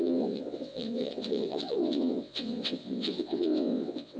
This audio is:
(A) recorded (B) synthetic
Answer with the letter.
B